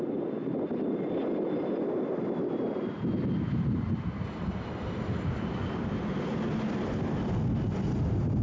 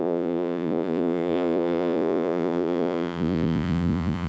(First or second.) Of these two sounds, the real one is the first